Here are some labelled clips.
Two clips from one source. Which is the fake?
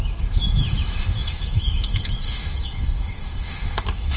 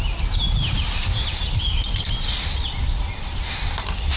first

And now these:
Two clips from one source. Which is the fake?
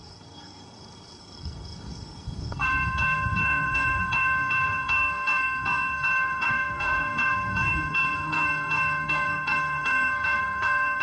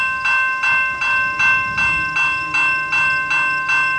first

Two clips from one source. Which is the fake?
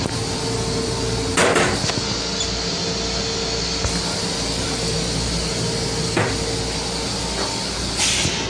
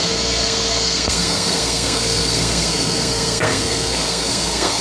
second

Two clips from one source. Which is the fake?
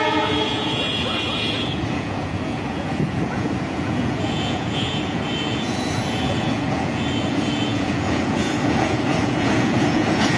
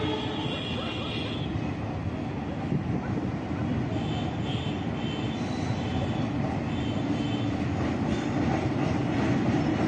first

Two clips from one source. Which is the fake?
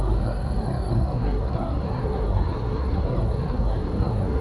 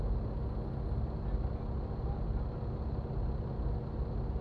first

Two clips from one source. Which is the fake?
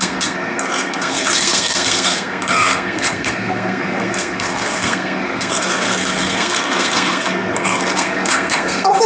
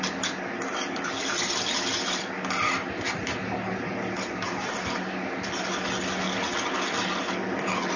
first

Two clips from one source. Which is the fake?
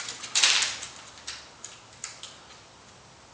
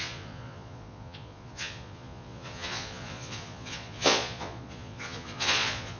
second